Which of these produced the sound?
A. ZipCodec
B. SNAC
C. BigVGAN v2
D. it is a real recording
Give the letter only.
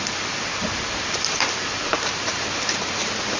C